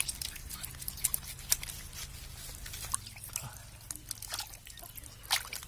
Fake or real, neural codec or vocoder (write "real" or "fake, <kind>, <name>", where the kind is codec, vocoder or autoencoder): real